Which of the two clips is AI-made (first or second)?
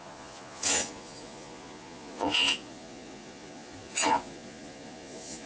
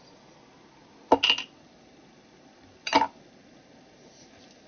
first